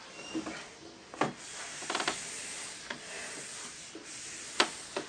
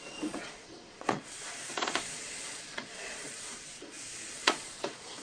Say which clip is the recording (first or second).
first